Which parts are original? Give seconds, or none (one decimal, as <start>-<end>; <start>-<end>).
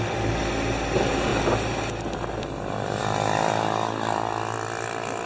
0.0-5.3